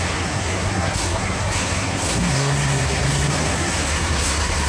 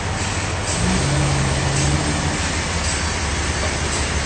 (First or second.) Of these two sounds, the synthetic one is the first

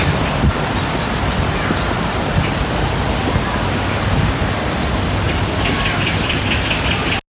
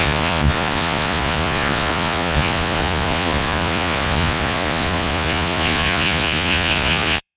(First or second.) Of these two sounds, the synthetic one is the second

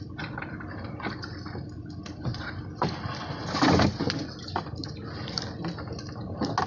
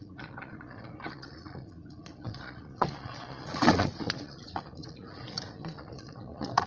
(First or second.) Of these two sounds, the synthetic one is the second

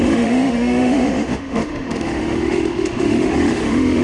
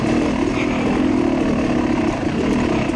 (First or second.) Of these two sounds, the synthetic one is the first